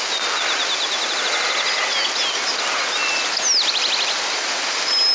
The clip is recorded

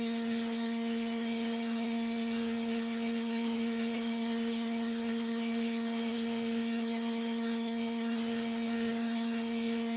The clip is remade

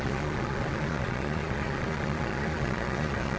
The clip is remade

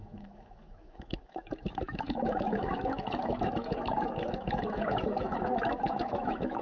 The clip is remade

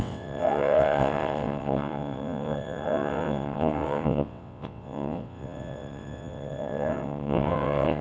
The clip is remade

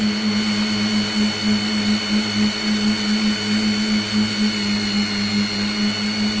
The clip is recorded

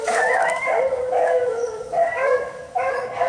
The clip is remade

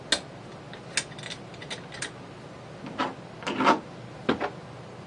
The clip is recorded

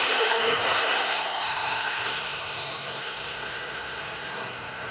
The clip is remade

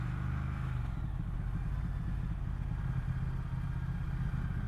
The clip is recorded